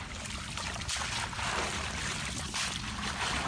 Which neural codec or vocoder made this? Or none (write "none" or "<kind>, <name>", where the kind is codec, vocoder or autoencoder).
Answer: none